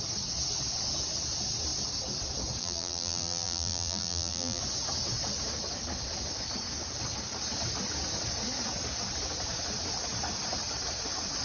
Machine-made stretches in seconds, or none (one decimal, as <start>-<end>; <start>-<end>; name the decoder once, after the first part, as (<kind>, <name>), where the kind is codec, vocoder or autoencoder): 2.6-4.6 (vocoder, BigVGAN v2)

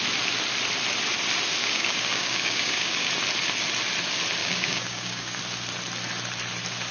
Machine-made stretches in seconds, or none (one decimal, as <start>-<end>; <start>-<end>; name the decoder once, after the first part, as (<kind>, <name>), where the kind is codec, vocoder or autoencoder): 1.6-3.1 (codec, DAC); 4.4-5.4